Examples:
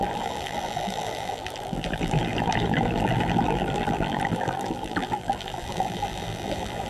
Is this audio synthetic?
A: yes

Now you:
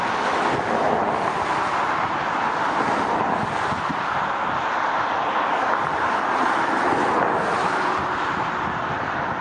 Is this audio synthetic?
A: no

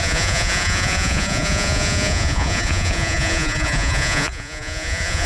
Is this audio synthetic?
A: yes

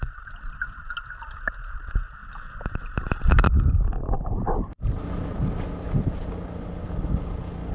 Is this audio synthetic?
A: no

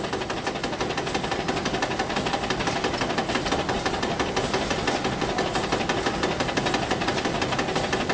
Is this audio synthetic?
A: no